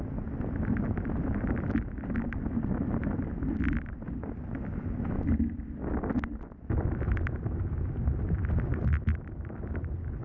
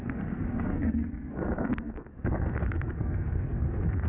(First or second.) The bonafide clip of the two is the first